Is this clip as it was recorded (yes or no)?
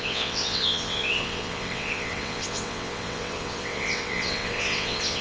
no